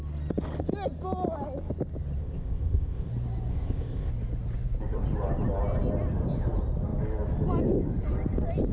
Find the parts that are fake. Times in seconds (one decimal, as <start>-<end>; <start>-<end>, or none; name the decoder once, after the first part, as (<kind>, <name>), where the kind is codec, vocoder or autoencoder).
2.2-3.1 (codec, ZipCodec); 3.5-4.1